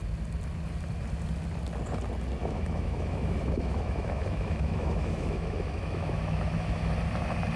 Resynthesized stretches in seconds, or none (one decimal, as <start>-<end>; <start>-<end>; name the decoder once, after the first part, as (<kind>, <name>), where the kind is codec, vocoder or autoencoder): 2.4-6.9 (autoencoder, DAC-VAE)